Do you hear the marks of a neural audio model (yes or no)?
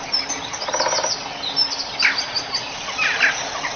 no